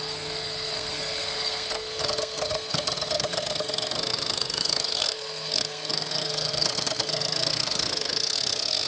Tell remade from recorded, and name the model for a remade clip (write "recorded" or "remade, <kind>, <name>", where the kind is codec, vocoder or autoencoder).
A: remade, codec, SNAC